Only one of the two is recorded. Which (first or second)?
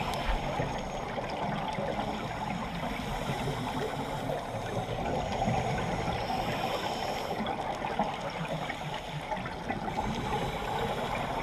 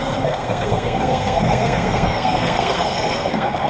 first